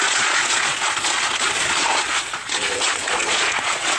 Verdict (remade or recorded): remade